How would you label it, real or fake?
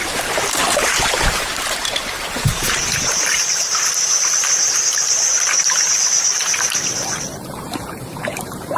fake